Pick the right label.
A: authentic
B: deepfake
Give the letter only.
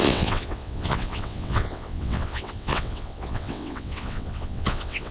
B